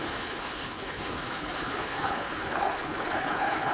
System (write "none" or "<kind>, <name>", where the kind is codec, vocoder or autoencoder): codec, HILCodec